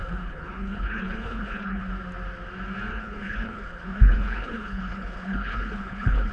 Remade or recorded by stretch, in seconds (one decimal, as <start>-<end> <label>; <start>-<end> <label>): 0.0-1.8 remade; 1.8-2.9 recorded; 2.9-6.3 remade

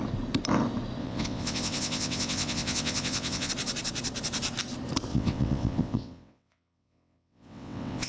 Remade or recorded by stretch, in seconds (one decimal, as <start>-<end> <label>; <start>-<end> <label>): 0.0-1.0 recorded; 1.0-3.5 remade; 3.5-5.1 recorded; 5.1-8.1 remade

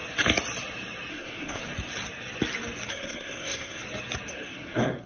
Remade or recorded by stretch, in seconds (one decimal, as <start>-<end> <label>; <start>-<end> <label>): 0.0-1.1 recorded; 1.1-1.6 remade; 1.6-2.9 recorded; 2.9-3.8 remade; 3.8-4.3 recorded; 4.3-5.1 remade

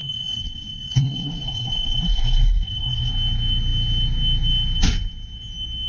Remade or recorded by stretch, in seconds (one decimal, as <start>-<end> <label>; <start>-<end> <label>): 0.0-3.1 remade; 3.1-5.9 recorded

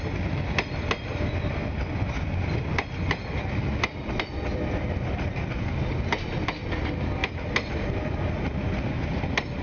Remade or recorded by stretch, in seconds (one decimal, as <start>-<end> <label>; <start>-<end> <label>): 0.0-9.6 recorded

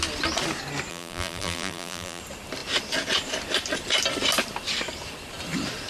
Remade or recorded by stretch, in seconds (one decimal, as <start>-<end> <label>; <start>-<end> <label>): 0.0-0.9 recorded; 0.9-2.2 remade; 2.2-5.9 recorded